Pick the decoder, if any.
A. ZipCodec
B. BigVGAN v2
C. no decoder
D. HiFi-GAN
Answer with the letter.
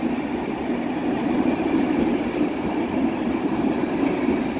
B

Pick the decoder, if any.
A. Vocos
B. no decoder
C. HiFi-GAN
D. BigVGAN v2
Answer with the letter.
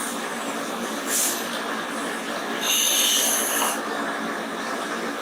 B